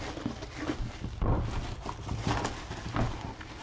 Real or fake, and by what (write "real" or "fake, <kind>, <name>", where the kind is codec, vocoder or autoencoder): real